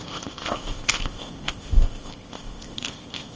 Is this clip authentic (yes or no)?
no